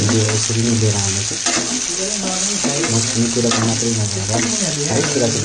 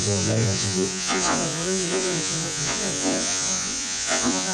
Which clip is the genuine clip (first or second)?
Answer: first